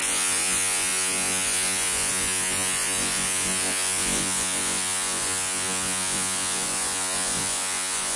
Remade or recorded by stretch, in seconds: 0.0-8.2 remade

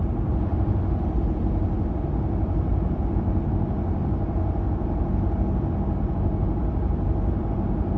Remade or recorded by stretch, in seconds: 0.0-8.0 recorded